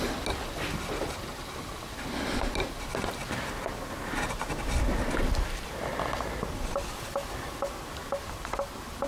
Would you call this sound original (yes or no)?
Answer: yes